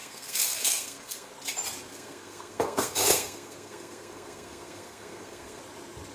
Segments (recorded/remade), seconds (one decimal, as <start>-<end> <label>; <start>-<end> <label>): 0.0-1.3 remade; 1.3-1.9 recorded; 1.9-5.6 remade; 5.6-6.1 recorded